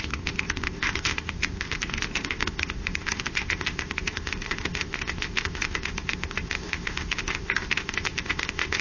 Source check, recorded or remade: remade